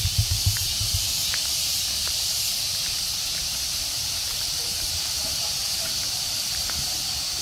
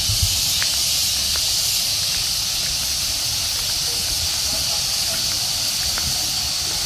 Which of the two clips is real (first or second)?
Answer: second